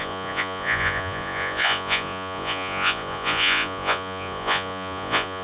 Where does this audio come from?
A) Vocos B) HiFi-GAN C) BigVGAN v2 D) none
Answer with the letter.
A